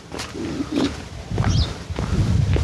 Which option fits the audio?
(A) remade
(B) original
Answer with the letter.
B